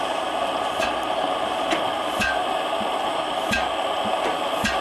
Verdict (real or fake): real